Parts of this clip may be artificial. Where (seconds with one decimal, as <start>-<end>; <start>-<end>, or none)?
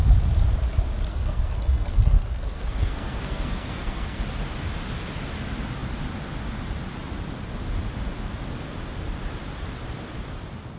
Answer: 1.1-4.2